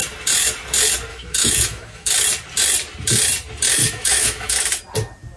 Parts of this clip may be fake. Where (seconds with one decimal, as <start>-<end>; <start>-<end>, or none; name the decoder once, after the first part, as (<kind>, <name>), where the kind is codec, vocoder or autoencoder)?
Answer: 1.1-2.1 (autoencoder, DAC-VAE); 3.8-4.8